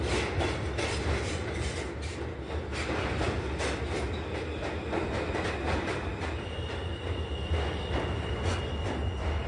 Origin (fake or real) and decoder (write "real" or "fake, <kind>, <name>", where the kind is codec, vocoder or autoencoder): real